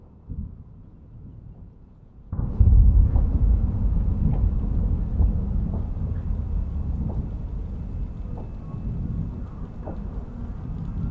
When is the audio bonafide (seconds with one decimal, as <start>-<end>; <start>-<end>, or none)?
0.0-0.8; 4.5-11.1